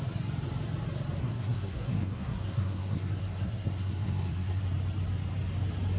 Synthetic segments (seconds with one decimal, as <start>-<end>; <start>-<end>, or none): 1.2-4.6